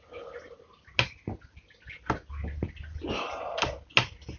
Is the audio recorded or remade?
recorded